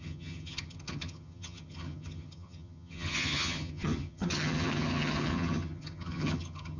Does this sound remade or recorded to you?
remade